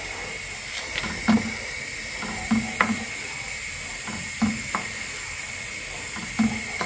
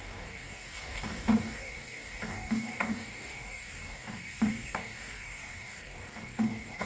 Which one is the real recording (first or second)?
first